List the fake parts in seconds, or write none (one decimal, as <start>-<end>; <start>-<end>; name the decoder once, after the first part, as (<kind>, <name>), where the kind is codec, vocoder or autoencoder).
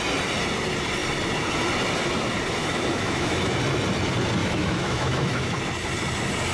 2.6-3.6 (autoencoder, DAC-VAE); 4.4-5.6